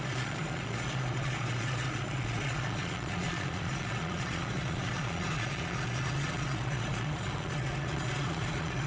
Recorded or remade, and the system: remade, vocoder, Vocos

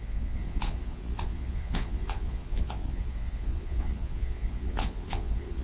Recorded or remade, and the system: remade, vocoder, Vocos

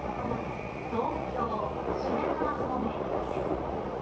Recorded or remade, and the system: remade, vocoder, Vocos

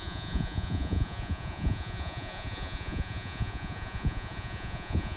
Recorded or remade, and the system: remade, vocoder, Vocos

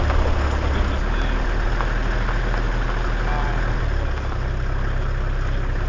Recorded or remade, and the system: recorded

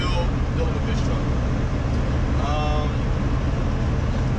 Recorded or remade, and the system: recorded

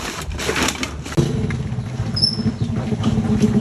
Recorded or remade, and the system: recorded